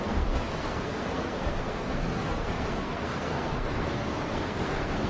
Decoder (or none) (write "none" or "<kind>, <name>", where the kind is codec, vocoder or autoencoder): codec, SNAC